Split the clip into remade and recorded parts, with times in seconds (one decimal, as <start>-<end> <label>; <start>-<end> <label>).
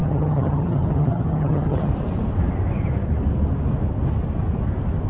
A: 0.0-1.9 remade; 1.9-5.1 recorded